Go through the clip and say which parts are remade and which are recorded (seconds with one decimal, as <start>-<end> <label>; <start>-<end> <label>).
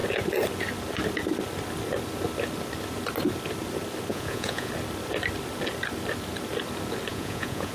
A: 0.0-4.1 recorded; 4.1-4.7 remade; 4.7-7.1 recorded; 7.1-7.7 remade